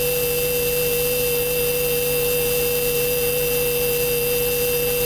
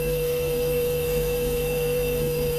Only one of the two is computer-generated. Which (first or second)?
second